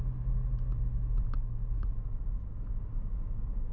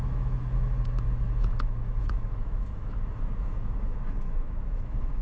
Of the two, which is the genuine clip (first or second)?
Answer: first